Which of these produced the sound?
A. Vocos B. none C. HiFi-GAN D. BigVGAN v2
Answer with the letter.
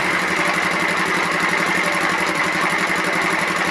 D